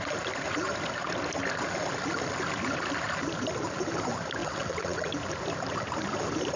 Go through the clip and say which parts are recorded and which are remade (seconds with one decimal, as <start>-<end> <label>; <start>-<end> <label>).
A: 0.0-4.4 recorded; 4.4-5.1 remade; 5.1-6.6 recorded